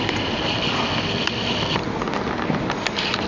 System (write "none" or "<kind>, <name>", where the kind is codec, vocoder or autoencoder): none